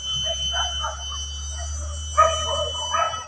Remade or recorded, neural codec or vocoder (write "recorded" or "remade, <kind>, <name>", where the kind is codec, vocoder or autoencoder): recorded